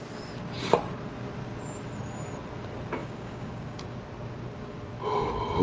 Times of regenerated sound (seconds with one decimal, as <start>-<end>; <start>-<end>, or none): 3.0-3.8